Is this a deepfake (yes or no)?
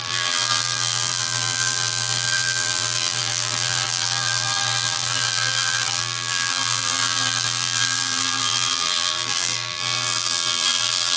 yes